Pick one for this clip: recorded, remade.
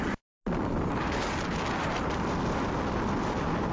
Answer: recorded